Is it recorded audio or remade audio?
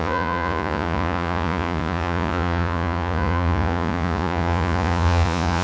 remade